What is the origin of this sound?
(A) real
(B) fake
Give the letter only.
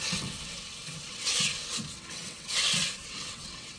B